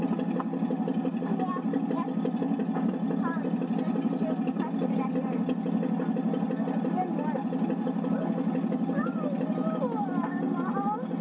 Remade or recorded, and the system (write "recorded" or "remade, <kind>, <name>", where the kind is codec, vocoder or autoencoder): recorded